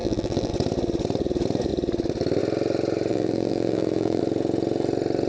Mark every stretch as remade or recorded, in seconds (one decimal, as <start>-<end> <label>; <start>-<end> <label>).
0.0-0.5 remade; 0.5-3.1 recorded; 3.1-4.2 remade; 4.2-5.3 recorded